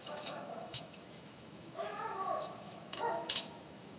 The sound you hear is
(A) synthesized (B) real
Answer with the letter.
A